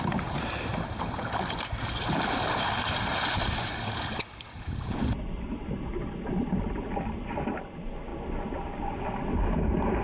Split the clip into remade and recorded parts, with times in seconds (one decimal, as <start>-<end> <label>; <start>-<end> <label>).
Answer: 0.0-0.7 recorded; 0.7-5.6 remade; 5.6-10.0 recorded